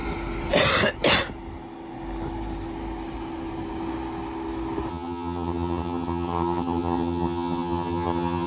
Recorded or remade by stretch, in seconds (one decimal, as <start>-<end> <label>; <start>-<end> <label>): 0.0-4.9 recorded; 4.9-8.5 remade